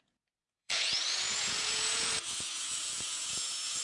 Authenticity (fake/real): fake